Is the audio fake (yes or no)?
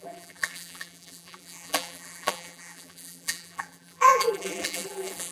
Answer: yes